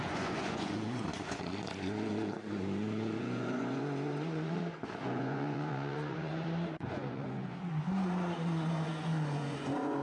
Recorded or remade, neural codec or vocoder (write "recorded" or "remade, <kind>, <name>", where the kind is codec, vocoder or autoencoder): remade, vocoder, Vocos